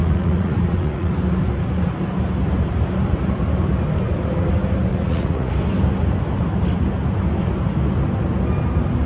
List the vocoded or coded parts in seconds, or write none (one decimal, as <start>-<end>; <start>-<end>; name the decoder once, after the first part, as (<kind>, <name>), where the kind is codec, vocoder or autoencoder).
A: 0.0-1.1 (vocoder, Vocos); 4.9-5.5